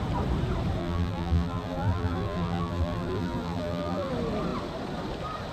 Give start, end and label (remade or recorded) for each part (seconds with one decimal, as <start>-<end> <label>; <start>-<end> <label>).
0.0-0.8 recorded; 0.8-4.1 remade; 4.1-5.5 recorded